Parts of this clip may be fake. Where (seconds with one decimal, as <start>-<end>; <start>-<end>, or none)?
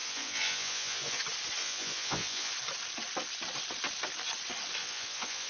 0.0-1.2; 1.6-2.5; 4.8-5.5